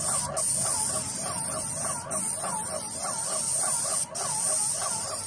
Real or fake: real